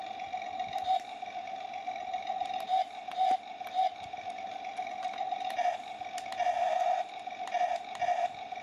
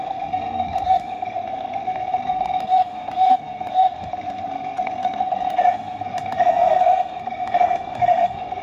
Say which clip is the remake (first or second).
second